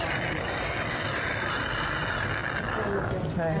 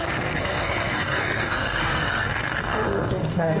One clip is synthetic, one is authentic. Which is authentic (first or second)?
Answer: first